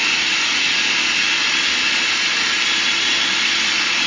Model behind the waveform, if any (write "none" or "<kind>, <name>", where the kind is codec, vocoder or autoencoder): none